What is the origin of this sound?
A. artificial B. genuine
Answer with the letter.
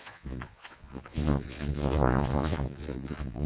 A